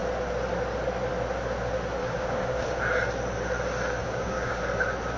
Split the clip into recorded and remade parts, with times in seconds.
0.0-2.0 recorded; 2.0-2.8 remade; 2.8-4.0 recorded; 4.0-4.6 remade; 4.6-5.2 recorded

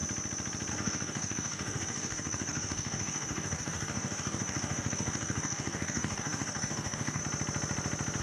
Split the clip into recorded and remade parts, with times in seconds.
0.0-0.7 recorded; 0.7-7.2 remade; 7.2-8.2 recorded

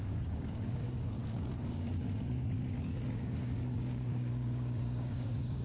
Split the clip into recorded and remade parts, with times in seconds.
0.0-5.6 remade

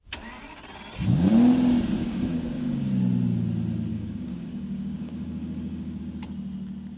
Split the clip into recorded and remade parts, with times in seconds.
0.0-2.0 recorded; 2.0-2.9 remade; 2.9-3.9 recorded; 3.9-6.0 remade; 6.0-7.0 recorded

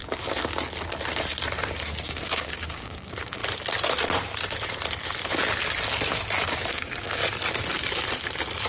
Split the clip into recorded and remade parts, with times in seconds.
0.0-2.0 recorded; 2.0-3.4 remade; 3.4-6.7 recorded; 6.7-7.2 remade; 7.2-8.7 recorded

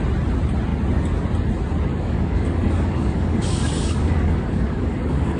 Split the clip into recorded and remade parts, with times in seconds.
0.0-1.9 recorded; 1.9-5.4 remade

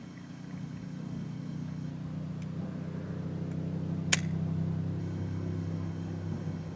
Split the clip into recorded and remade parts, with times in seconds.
0.0-1.9 remade; 1.9-5.0 recorded; 5.0-6.8 remade